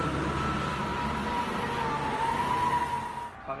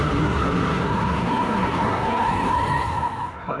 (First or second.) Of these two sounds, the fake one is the second